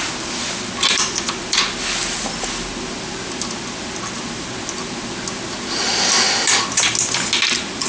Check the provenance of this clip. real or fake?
real